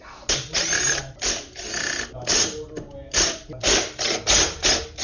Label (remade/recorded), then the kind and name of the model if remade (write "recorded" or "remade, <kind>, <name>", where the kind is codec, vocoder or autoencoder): recorded